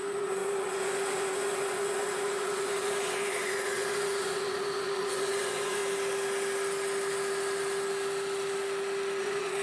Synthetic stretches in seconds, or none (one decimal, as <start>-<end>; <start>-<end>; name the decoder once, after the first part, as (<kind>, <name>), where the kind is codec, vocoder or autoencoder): 0.0-5.8 (vocoder, Vocos); 9.2-9.6